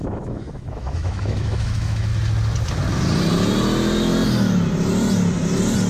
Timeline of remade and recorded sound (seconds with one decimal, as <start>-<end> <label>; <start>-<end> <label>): 0.0-2.1 remade; 2.1-5.9 recorded